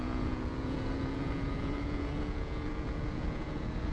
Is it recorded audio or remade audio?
remade